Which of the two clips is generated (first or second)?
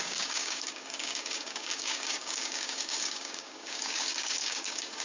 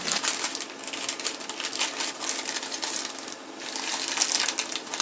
first